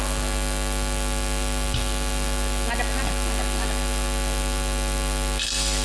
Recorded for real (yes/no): yes